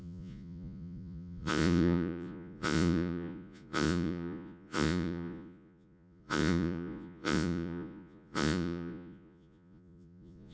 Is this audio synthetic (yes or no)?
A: yes